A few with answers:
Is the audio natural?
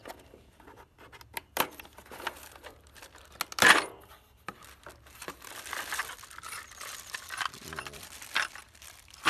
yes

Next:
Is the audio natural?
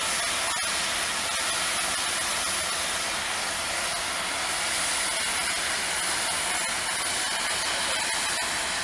yes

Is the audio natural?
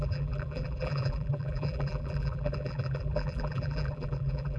no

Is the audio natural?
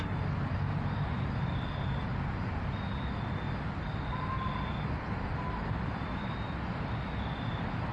yes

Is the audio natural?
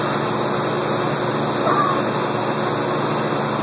yes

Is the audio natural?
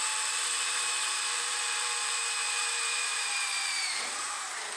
no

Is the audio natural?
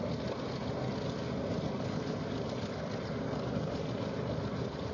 yes